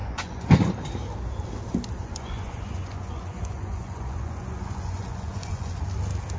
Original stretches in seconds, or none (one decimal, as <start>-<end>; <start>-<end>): 0.7-2.0; 5.8-6.4